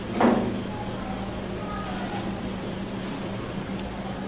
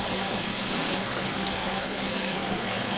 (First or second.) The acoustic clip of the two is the first